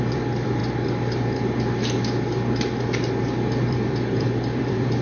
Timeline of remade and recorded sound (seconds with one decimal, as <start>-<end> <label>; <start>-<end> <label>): 0.0-0.6 remade; 0.6-3.6 recorded; 3.6-5.0 remade